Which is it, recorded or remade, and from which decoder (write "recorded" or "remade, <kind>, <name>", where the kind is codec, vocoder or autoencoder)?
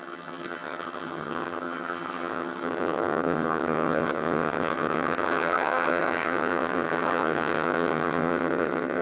remade, vocoder, HiFi-GAN